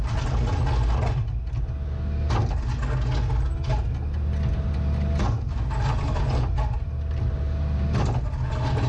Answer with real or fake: real